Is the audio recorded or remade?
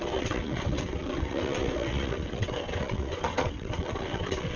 remade